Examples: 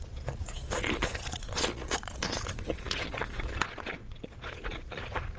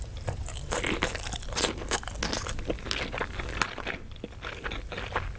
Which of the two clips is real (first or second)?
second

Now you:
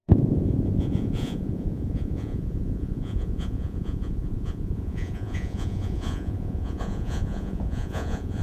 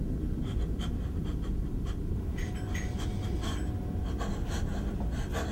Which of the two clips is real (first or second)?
second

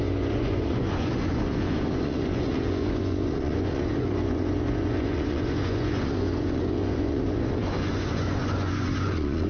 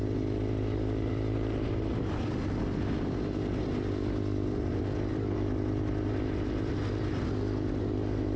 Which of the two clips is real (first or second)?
second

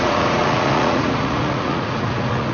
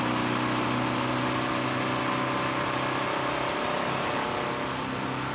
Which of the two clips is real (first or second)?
second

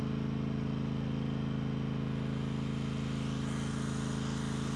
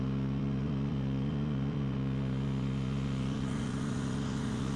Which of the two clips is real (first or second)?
first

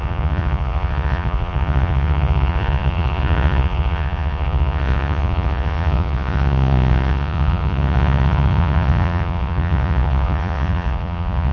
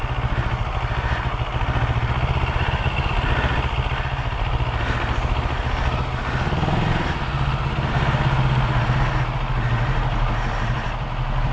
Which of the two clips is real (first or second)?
second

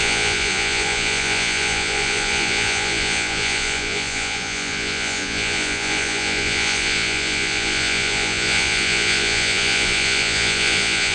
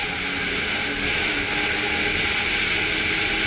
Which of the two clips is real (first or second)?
second